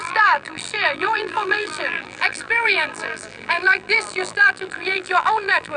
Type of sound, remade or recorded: remade